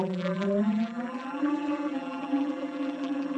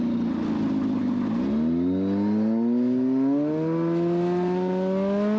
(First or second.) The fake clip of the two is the first